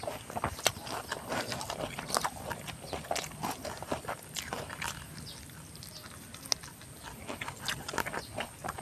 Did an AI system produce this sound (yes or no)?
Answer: no